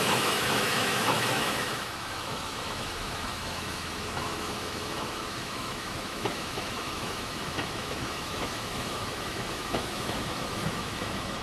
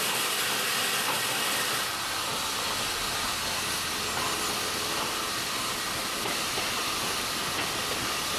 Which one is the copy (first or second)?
first